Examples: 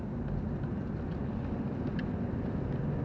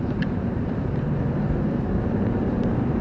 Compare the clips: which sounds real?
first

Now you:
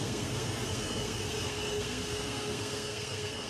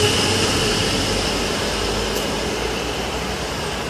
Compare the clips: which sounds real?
second